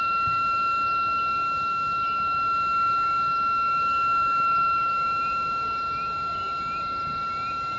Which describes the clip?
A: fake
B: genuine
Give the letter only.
B